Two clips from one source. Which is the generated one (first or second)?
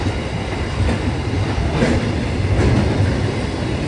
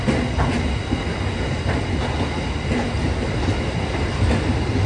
first